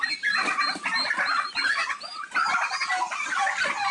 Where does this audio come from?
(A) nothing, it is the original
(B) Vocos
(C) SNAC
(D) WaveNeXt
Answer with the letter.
A